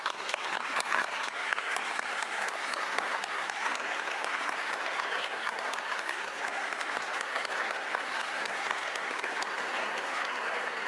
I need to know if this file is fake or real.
fake